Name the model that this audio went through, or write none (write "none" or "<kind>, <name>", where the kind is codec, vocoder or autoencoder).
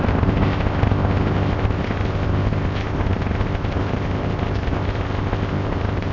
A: codec, ZipCodec